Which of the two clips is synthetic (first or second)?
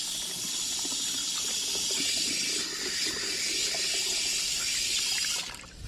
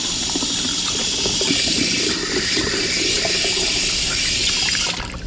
second